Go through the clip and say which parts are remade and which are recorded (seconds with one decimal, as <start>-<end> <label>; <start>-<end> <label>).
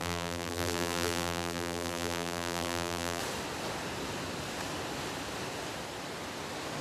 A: 0.0-3.2 remade; 3.2-6.8 recorded